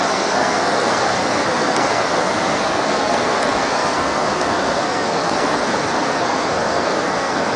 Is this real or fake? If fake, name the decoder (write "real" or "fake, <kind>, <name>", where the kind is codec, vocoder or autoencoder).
fake, codec, SNAC